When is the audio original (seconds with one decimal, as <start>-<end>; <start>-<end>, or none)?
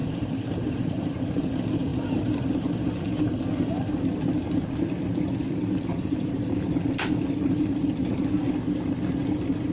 1.2-1.9; 3.8-5.9; 6.6-9.7